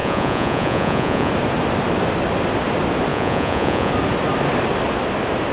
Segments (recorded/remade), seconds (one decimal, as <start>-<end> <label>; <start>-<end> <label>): 0.0-1.3 remade; 1.3-3.1 recorded; 3.1-3.9 remade; 3.9-5.5 recorded